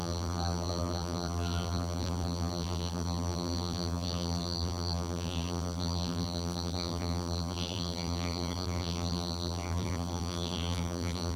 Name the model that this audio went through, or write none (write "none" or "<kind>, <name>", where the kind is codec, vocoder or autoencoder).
vocoder, BigVGAN v2